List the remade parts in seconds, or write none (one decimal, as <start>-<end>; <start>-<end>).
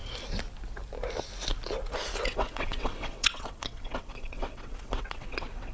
2.3-5.7